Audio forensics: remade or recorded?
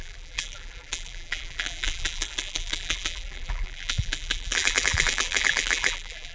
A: remade